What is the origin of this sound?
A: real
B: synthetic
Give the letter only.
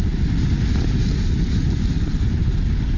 A